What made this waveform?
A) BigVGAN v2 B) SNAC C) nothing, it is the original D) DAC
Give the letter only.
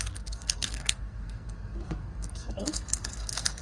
B